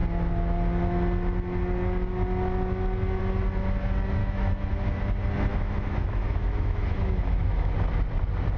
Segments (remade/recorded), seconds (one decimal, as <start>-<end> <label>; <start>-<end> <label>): 0.0-4.2 recorded; 4.2-5.0 remade; 5.0-5.5 recorded; 5.5-7.7 remade; 7.7-8.6 recorded